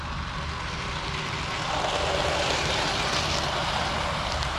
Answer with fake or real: real